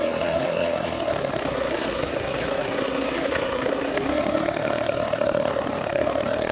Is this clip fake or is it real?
fake